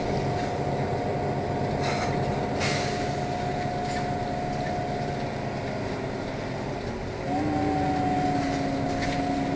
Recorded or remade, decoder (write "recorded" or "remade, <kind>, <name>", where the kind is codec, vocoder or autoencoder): recorded